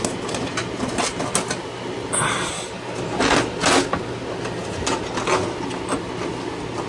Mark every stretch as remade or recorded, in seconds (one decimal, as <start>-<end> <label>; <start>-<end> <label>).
0.0-6.9 recorded